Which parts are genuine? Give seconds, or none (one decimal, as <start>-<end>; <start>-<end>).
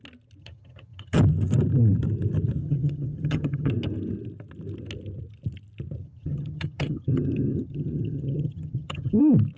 0.0-0.4; 1.2-2.6; 3.7-6.0; 9.2-9.6